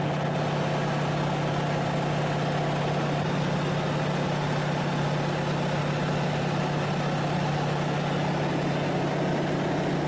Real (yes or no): yes